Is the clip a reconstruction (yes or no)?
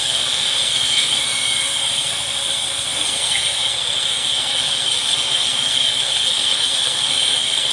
yes